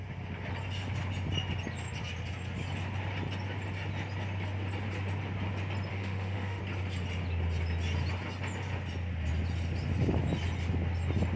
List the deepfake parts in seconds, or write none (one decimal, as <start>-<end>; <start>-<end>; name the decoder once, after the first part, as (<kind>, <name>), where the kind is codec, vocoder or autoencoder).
5.9-6.6 (autoencoder, DAC-VAE)

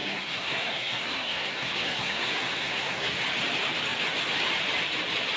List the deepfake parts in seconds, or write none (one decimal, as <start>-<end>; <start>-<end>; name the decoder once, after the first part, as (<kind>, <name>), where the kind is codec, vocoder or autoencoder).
0.0-3.2 (codec, SNAC)

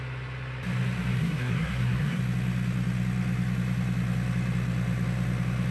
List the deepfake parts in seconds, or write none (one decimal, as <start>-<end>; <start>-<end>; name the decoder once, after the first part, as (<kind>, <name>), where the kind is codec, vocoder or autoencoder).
1.1-2.2 (codec, SNAC)

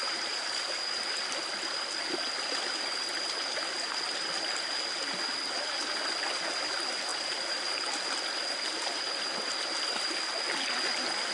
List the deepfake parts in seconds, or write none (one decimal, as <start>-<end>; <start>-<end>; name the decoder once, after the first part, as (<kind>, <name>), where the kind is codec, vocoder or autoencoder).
none

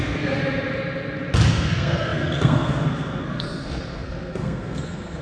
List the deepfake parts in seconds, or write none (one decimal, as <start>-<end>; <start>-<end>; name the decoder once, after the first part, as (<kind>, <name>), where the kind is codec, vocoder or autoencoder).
0.0-0.4 (codec, SNAC); 1.5-5.2